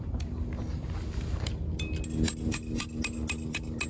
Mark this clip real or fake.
real